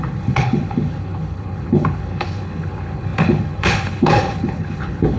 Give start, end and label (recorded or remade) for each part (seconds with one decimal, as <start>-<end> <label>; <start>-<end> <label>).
0.0-5.2 remade